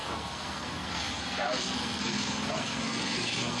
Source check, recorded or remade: remade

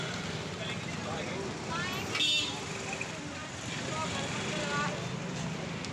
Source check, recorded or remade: recorded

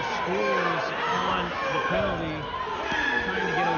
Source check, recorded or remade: recorded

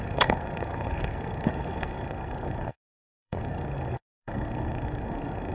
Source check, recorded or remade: remade